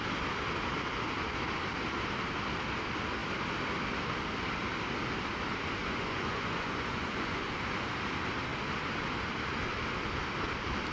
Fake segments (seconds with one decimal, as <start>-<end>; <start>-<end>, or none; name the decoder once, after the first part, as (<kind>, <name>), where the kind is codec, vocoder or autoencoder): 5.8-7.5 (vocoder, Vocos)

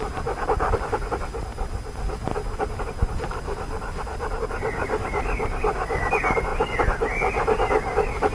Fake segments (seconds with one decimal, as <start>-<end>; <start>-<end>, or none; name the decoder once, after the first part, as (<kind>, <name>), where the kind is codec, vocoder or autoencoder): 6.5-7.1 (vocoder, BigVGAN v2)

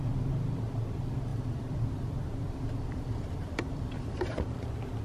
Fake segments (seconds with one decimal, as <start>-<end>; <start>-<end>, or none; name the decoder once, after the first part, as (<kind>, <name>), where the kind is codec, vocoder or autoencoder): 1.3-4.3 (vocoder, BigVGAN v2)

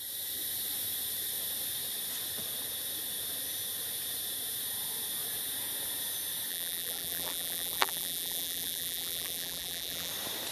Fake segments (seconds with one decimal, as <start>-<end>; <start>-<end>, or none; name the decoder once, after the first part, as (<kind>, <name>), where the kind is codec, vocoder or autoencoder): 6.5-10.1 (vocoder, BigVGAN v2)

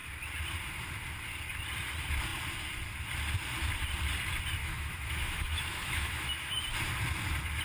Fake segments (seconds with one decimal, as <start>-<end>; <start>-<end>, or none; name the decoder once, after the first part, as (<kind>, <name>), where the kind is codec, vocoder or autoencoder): 4.6-6.6 (autoencoder, DAC-VAE)

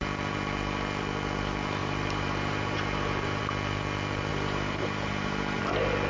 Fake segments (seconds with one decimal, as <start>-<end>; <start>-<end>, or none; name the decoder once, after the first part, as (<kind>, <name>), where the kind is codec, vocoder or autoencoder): 1.8-3.4 (vocoder, BigVGAN v2); 4.3-5.6